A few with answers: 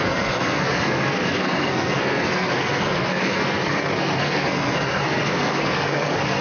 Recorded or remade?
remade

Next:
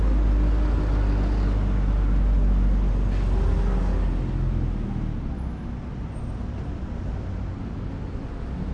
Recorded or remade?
recorded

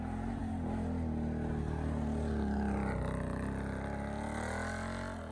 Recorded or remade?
recorded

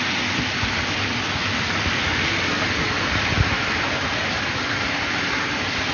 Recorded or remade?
recorded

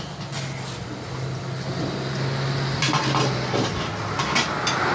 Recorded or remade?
recorded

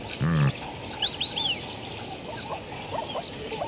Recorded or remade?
recorded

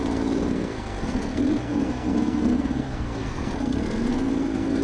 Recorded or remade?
remade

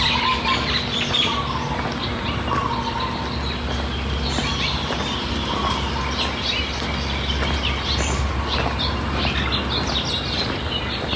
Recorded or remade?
recorded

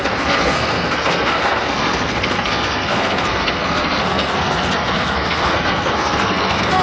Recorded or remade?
remade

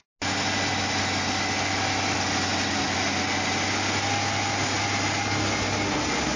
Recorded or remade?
recorded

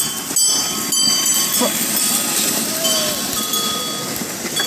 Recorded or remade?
recorded